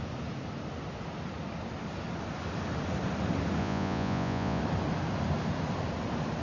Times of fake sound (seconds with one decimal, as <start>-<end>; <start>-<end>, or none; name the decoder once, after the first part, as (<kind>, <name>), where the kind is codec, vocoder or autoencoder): 3.6-4.6 (vocoder, Vocos)